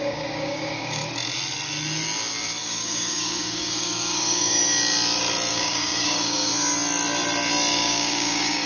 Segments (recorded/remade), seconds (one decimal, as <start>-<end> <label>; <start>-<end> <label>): 0.0-1.0 remade; 1.0-2.6 recorded; 2.6-4.6 remade; 4.6-5.5 recorded; 5.5-6.5 remade; 6.5-7.7 recorded; 7.7-8.7 remade